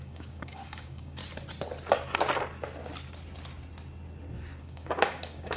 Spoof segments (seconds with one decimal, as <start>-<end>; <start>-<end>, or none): 0.0-1.2; 4.6-5.6